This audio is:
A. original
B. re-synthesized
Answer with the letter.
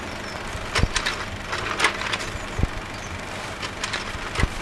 A